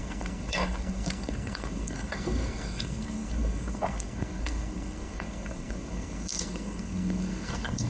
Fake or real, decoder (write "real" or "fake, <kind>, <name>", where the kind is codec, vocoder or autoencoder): fake, codec, SNAC